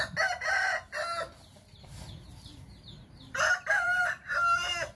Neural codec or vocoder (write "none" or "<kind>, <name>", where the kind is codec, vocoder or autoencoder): none